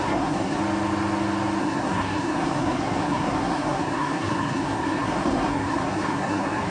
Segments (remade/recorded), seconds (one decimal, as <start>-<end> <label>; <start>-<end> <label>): 0.0-0.6 remade; 0.6-1.6 recorded; 1.6-6.7 remade